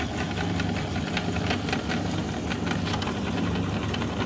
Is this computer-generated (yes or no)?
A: no